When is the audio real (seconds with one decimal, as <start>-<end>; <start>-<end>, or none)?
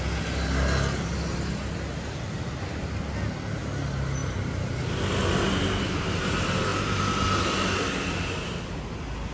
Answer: 0.0-9.3